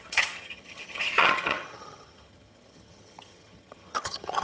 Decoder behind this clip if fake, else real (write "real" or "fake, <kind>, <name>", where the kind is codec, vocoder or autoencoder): fake, vocoder, HiFi-GAN